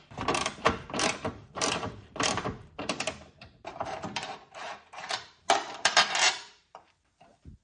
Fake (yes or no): yes